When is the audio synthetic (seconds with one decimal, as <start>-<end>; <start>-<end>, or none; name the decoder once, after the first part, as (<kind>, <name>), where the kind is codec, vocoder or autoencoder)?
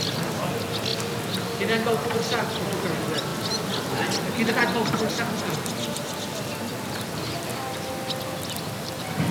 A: none